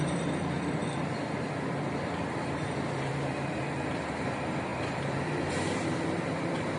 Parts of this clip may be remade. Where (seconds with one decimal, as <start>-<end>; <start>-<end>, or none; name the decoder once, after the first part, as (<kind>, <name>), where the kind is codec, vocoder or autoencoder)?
0.0-6.8 (vocoder, BigVGAN v2)